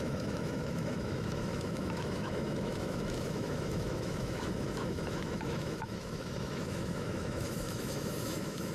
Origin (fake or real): fake